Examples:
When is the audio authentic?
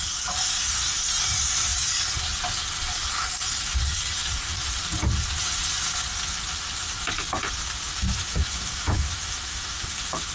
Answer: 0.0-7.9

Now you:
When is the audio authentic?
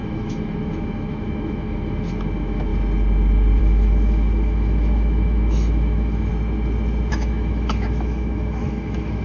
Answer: 2.7-3.6; 6.3-7.1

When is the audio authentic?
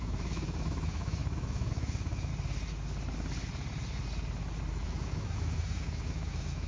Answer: 2.3-4.7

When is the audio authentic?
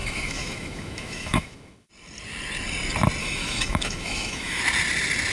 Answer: 1.9-3.2; 4.6-5.3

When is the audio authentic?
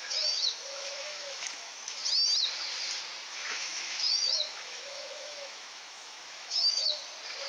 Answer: 2.0-3.3; 7.0-7.5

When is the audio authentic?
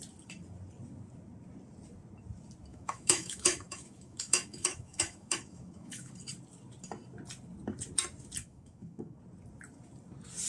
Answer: 0.0-2.7; 6.1-8.4; 9.2-10.5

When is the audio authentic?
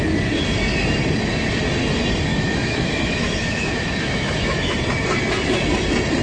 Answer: 0.0-2.3; 4.8-6.2